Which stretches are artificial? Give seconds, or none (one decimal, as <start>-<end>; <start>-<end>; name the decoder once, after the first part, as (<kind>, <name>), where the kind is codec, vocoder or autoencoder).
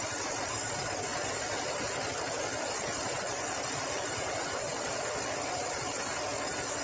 none